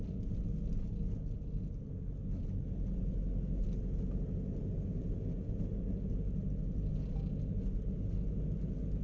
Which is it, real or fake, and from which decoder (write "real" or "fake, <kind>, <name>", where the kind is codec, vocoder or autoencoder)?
real